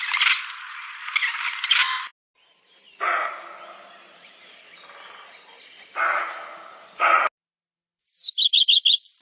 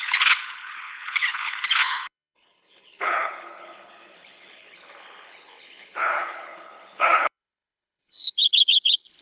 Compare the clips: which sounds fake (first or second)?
second